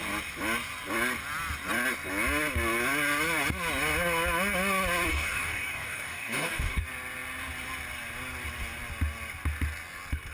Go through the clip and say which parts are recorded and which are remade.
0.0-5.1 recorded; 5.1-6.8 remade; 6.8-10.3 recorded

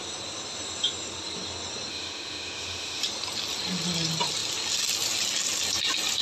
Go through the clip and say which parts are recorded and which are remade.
0.0-1.9 recorded; 1.9-3.0 remade; 3.0-6.2 recorded

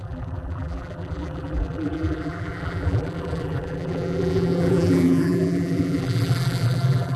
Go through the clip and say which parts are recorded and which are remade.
0.0-7.2 remade

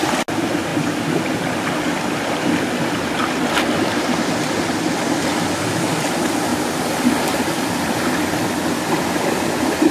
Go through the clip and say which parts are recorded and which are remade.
0.0-6.5 recorded; 6.5-7.4 remade; 7.4-9.9 recorded

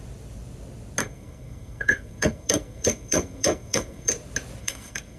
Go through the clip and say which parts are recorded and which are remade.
0.0-1.0 recorded; 1.0-4.1 remade; 4.1-4.6 recorded; 4.6-5.2 remade

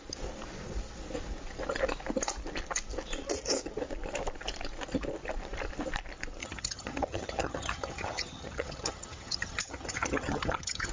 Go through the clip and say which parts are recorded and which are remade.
0.0-6.4 recorded; 6.4-10.9 remade

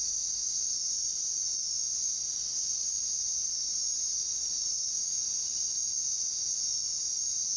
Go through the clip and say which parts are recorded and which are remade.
0.0-2.8 recorded; 2.8-4.8 remade; 4.8-7.6 recorded

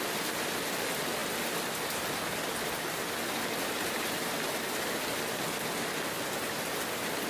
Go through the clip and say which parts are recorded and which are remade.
0.0-7.3 recorded